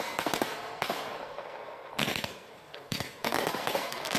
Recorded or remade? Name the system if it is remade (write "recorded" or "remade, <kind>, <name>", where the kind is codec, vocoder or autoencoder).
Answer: remade, codec, SNAC